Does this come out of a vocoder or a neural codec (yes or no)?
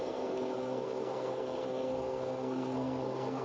yes